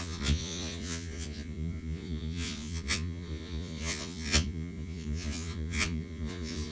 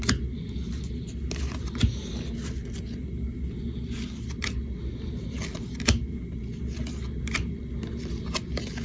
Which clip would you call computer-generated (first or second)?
first